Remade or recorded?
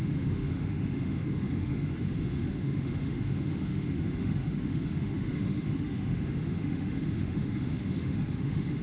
remade